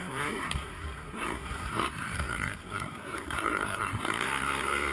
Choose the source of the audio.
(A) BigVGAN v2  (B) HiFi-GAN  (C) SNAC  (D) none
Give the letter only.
C